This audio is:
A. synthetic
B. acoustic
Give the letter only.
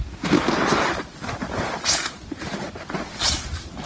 B